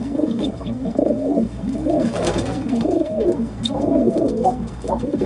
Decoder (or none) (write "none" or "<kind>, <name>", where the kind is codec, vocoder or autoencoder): codec, SNAC